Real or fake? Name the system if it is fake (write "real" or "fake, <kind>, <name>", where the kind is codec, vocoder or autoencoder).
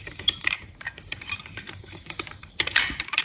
fake, vocoder, BigVGAN v2